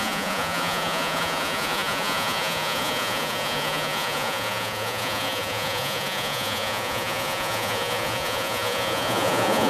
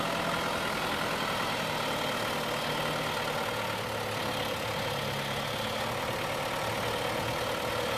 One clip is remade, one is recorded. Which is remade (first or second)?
first